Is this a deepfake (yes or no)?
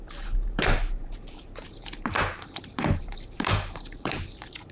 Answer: yes